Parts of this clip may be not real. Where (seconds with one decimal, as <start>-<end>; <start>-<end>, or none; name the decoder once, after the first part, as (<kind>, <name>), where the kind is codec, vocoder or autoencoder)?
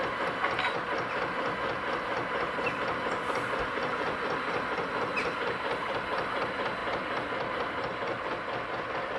6.8-7.5 (vocoder, BigVGAN v2)